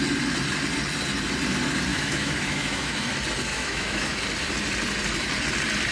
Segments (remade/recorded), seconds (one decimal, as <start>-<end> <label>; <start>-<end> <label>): 0.0-1.9 recorded; 1.9-3.1 remade; 3.1-3.5 recorded; 3.5-4.2 remade; 4.2-5.9 recorded